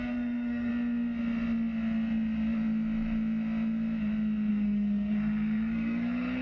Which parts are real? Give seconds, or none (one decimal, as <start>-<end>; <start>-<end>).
0.7-4.5